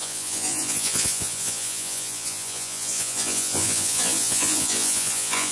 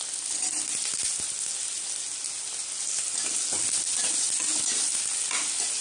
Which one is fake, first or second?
first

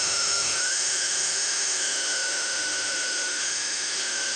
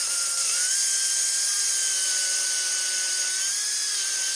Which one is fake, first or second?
first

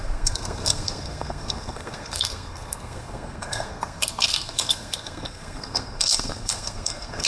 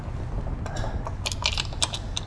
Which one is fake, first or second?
first